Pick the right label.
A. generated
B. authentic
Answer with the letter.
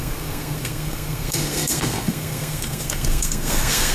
A